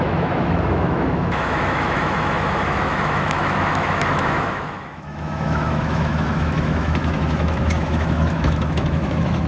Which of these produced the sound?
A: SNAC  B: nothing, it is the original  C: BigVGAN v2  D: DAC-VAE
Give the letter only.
D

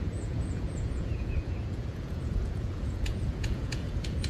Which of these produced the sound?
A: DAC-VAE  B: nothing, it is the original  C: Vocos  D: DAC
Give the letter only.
C